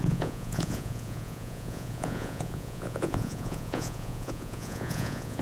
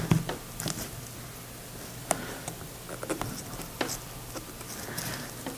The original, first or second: second